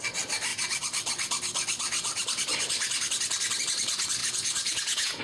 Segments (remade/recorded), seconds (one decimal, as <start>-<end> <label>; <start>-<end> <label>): 0.0-4.2 recorded; 4.2-5.2 remade

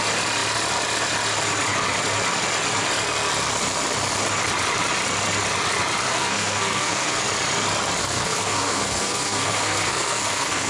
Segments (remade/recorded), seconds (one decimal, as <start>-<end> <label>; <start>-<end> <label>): 0.0-6.1 recorded; 6.1-7.2 remade; 7.2-8.0 recorded; 8.0-10.7 remade

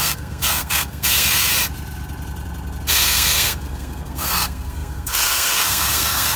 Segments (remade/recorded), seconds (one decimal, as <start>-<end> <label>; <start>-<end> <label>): 0.0-1.5 remade; 1.5-2.9 recorded; 2.9-6.4 remade

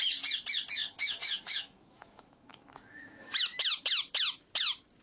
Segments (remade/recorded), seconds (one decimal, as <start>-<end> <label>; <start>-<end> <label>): 0.0-0.8 recorded; 0.8-3.8 remade; 3.8-5.0 recorded

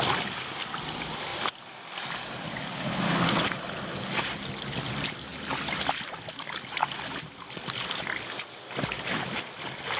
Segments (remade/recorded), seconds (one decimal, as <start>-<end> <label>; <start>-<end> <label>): 0.0-10.0 recorded

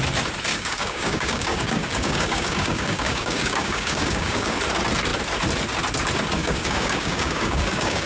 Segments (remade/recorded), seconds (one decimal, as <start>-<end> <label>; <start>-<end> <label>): 0.0-0.5 recorded; 0.5-4.6 remade; 4.6-6.4 recorded; 6.4-8.1 remade

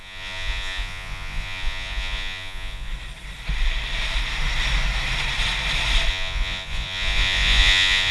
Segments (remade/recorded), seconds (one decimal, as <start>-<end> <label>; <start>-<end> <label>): 0.0-2.9 remade; 2.9-6.1 recorded; 6.1-8.1 remade